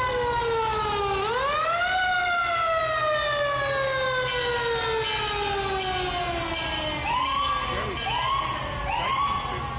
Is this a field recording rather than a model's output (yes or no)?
yes